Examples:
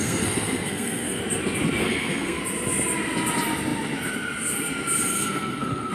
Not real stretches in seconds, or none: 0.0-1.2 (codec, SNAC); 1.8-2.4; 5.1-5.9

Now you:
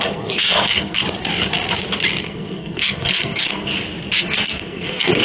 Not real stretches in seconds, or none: 0.0-1.0 (codec, SNAC); 2.2-3.7; 4.2-5.2

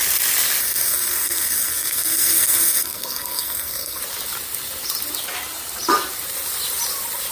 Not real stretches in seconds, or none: 0.6-4.0 (codec, SNAC)

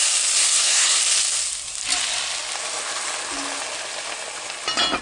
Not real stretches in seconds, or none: 0.4-1.0 (codec, SNAC)

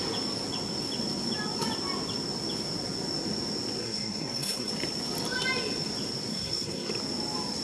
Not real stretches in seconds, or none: 3.8-4.7 (codec, SNAC); 6.3-6.9

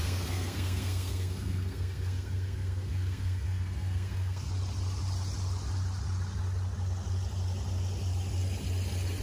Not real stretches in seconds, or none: 0.0-4.5 (codec, SNAC)